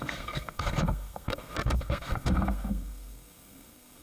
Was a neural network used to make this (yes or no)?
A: yes